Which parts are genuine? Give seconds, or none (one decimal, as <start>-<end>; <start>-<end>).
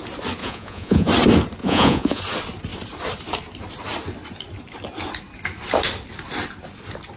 0.0-0.4; 1.1-1.6; 2.2-7.2